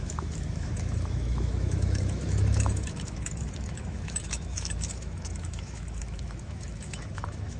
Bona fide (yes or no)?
no